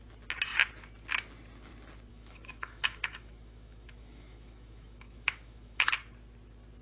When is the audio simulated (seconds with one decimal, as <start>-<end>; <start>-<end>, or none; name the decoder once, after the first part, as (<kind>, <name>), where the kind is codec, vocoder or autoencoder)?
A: 2.1-5.9 (autoencoder, DAC-VAE)